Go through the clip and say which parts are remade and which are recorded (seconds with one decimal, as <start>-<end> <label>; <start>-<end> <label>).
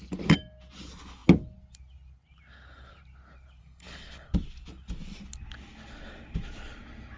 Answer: 0.0-3.6 recorded; 3.6-4.3 remade; 4.3-7.2 recorded